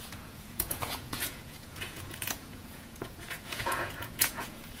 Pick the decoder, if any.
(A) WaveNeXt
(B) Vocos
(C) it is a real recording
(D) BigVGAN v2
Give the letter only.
B